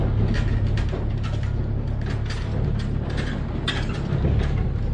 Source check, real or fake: real